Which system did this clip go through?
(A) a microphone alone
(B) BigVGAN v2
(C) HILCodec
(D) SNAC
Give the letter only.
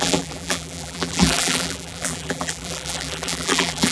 B